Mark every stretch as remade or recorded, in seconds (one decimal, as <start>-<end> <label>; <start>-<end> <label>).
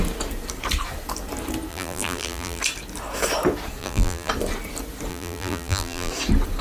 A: 0.0-1.7 recorded; 1.7-2.6 remade; 2.6-3.8 recorded; 3.8-4.3 remade; 4.3-5.1 recorded; 5.1-6.1 remade; 6.1-6.6 recorded